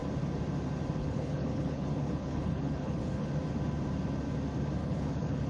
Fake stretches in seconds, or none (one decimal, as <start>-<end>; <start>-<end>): 1.0-3.3; 4.8-5.5